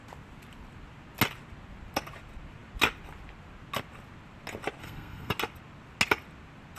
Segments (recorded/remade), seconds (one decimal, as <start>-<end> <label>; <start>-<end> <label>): 0.0-4.8 recorded; 4.8-5.3 remade; 5.3-6.8 recorded